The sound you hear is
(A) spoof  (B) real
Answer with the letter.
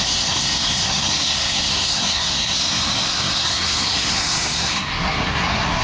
A